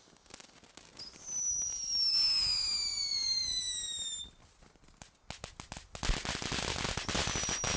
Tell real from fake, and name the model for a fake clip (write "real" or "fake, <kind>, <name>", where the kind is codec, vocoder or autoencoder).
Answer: real